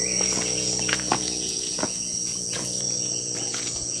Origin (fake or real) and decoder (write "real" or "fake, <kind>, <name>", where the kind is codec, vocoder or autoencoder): fake, vocoder, Vocos